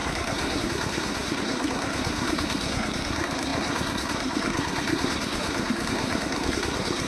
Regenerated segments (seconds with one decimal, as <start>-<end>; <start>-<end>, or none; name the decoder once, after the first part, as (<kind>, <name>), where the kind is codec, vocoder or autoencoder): 0.0-7.1 (codec, SNAC)